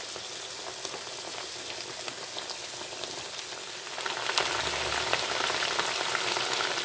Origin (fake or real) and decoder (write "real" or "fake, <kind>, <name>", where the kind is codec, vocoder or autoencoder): real